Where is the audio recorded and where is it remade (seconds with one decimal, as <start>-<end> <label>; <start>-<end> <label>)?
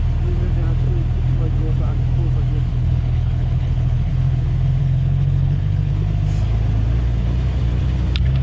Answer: 0.0-2.7 recorded; 2.7-4.1 remade; 4.1-4.8 recorded; 4.8-5.9 remade; 5.9-8.4 recorded